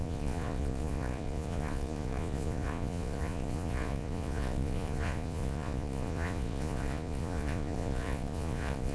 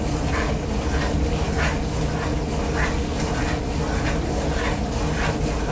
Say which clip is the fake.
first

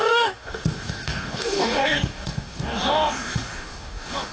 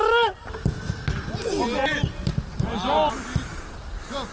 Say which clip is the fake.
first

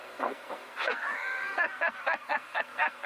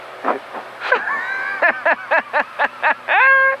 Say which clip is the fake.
first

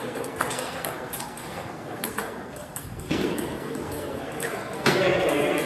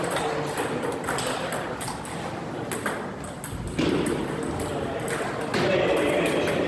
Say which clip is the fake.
first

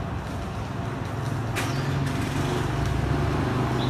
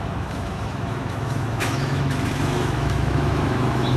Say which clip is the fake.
second